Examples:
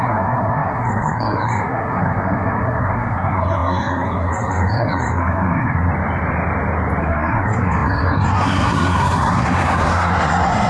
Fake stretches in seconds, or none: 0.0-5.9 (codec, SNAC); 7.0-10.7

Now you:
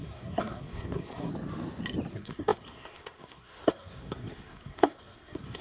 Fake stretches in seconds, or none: 0.0-1.3 (codec, SNAC); 2.1-5.6

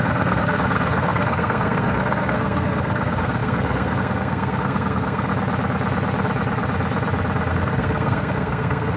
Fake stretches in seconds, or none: 0.0-5.3 (codec, SNAC); 7.5-9.0

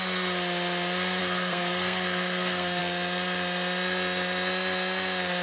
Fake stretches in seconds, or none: 1.2-2.8 (codec, SNAC)

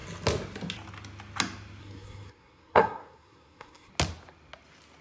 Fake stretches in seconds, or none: 1.8-3.9 (codec, SNAC)

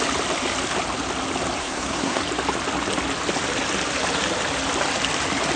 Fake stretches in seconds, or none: 1.6-2.2 (codec, SNAC)

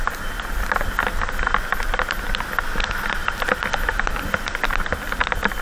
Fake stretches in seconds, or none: none

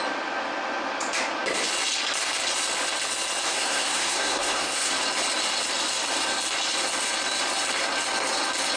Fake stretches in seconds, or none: 3.5-4.9 (codec, SNAC)